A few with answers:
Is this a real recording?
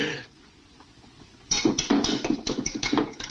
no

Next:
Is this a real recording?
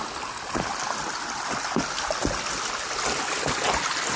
yes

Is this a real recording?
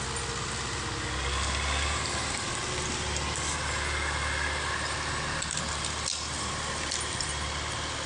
yes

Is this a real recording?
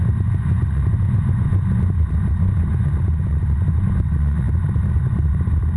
no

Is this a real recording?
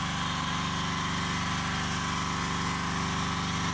yes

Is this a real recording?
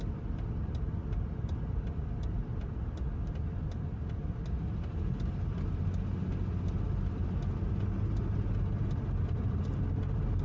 yes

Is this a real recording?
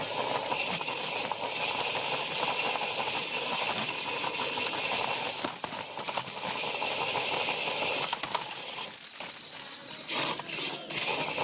yes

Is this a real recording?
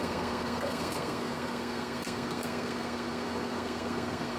no